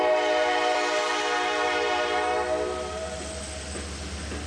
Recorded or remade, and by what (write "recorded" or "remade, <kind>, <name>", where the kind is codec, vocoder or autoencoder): recorded